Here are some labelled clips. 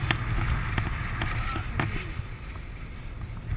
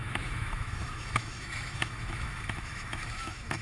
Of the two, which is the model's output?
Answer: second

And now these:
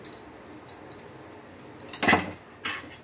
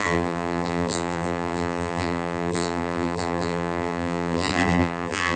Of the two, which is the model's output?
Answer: second